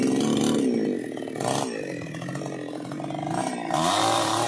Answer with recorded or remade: recorded